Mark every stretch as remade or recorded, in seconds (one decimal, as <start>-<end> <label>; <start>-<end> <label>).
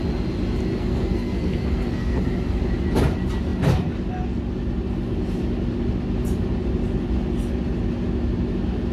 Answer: 0.0-0.7 recorded; 0.7-2.6 remade; 2.6-8.9 recorded